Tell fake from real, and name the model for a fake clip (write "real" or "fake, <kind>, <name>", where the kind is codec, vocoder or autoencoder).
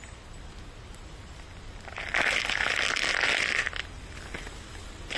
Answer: real